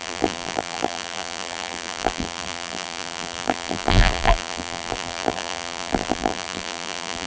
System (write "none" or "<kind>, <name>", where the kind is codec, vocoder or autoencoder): vocoder, BigVGAN v2